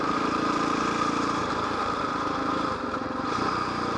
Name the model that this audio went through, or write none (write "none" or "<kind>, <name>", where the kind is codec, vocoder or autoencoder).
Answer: vocoder, BigVGAN v2